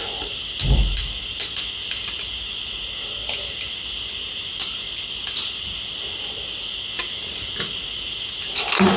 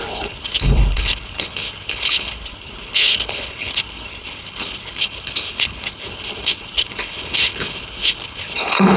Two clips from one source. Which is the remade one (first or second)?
second